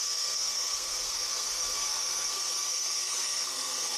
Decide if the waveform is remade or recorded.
remade